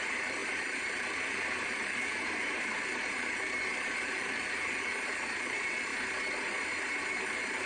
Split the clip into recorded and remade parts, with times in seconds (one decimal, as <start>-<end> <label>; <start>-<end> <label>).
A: 0.0-5.9 remade; 5.9-7.1 recorded; 7.1-7.7 remade